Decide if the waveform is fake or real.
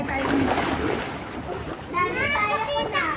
fake